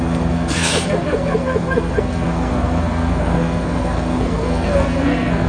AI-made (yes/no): yes